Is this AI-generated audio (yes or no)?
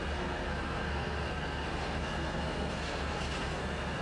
yes